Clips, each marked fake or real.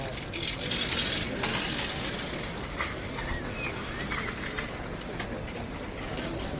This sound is real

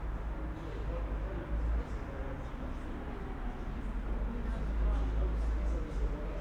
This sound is real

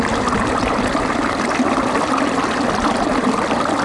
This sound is real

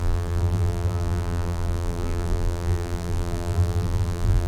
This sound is fake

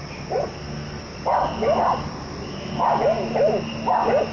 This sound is real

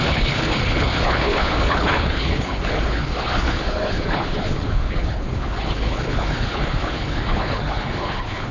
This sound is fake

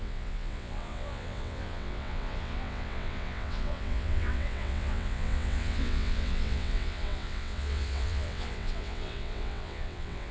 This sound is fake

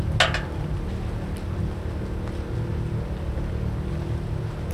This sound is real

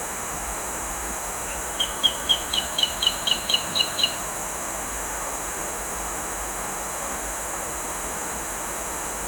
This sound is fake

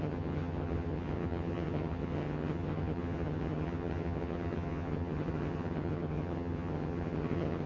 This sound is fake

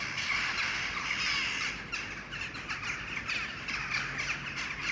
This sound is real